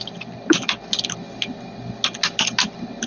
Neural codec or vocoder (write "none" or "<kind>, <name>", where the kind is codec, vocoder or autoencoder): none